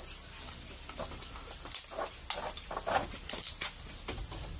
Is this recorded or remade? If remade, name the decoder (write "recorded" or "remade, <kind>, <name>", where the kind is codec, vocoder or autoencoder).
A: recorded